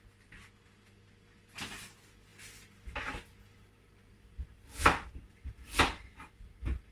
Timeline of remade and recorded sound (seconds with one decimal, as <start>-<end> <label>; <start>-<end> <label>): 0.0-6.9 recorded